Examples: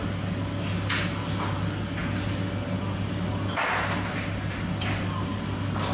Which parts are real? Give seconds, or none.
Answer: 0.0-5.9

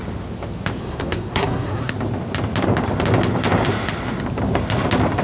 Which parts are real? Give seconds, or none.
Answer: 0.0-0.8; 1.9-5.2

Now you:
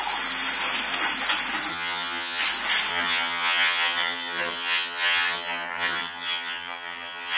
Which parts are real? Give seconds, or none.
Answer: 0.0-1.7; 2.4-2.9